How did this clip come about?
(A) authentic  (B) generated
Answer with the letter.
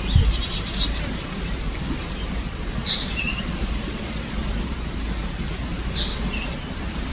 B